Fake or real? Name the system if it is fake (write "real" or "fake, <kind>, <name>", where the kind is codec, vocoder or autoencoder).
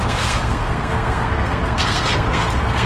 fake, codec, SNAC